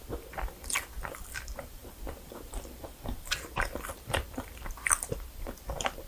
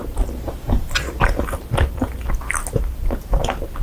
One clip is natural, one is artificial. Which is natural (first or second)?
second